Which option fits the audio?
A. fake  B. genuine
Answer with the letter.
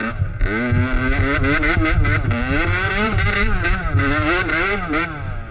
B